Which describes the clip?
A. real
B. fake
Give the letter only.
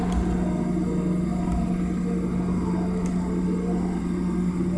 A